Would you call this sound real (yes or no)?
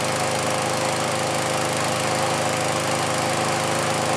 yes